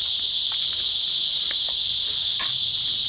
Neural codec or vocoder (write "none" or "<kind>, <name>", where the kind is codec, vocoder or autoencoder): none